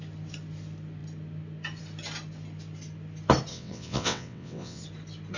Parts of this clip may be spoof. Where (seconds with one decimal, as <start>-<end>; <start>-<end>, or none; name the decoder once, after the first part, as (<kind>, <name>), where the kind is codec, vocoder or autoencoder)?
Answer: 3.5-4.8 (vocoder, WaveNeXt)